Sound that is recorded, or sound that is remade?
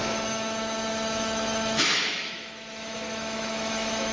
remade